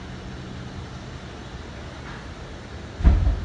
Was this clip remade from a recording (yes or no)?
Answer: no